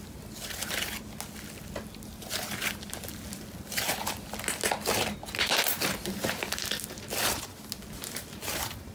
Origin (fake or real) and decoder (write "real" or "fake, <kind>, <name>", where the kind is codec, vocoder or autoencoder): real